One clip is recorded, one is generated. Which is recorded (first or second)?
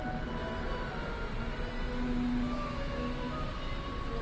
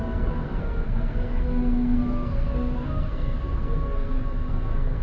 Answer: first